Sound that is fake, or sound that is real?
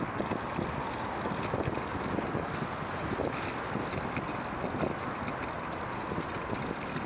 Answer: real